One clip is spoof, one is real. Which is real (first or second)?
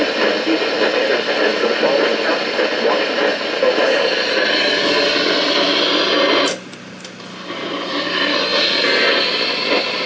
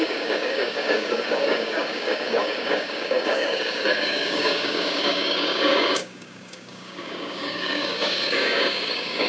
first